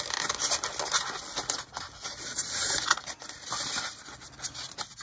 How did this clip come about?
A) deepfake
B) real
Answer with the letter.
B